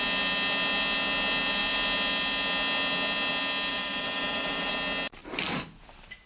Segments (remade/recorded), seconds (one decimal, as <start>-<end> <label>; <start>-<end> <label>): 0.0-3.7 recorded; 3.7-4.7 remade; 4.7-6.3 recorded